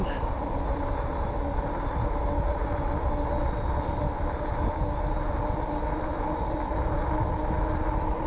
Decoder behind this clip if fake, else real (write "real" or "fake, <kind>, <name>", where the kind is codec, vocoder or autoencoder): real